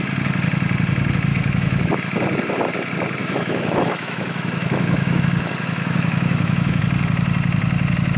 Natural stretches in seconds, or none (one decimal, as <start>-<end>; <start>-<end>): 0.0-1.3; 1.9-3.2; 6.8-8.2